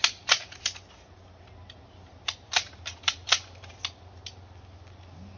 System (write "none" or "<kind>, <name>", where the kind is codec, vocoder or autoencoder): none